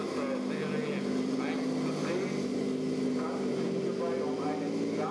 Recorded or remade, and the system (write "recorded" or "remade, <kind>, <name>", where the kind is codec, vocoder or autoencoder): recorded